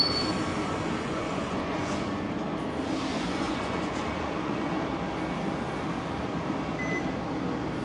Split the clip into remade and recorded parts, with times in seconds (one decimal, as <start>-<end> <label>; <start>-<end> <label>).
0.0-0.5 recorded; 0.5-2.5 remade; 2.5-3.1 recorded; 3.1-4.7 remade; 4.7-7.8 recorded